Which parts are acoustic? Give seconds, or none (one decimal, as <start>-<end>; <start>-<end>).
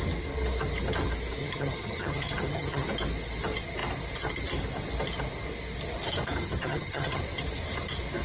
0.0-1.4; 2.9-6.4; 7.2-8.2